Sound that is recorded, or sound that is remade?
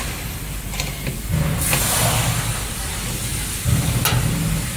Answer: recorded